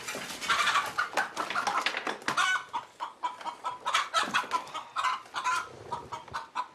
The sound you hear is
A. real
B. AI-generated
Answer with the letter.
A